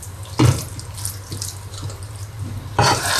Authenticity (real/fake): fake